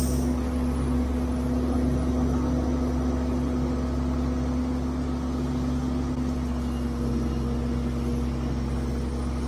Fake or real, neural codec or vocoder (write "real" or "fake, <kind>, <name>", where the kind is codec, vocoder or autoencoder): real